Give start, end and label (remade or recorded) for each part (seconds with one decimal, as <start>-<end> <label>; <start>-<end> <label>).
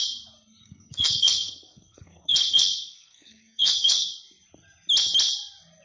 0.0-0.6 recorded; 0.6-4.1 remade; 4.1-5.8 recorded